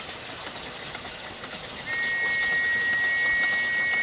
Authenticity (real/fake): real